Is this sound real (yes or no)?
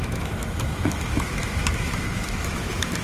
no